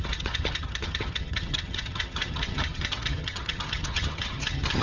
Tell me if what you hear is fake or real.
fake